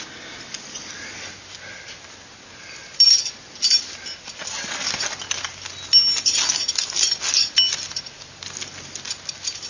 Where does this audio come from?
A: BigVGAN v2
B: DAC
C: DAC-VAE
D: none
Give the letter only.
D